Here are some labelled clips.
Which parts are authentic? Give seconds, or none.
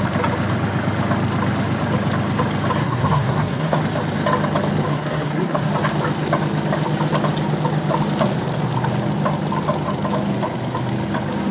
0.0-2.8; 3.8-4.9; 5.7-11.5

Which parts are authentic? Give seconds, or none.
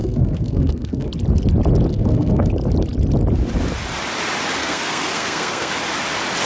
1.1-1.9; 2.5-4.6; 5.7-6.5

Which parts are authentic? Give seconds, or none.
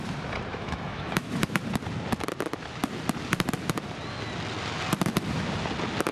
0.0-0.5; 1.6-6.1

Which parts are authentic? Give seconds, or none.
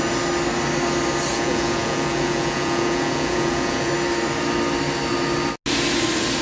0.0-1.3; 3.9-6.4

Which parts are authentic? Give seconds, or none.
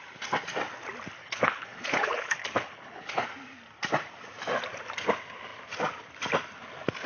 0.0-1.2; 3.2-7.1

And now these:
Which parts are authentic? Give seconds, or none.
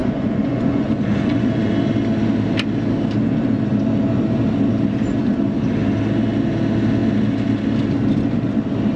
1.7-9.0